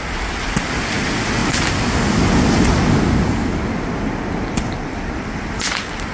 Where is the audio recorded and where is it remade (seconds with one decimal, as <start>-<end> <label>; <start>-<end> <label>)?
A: 0.0-6.1 recorded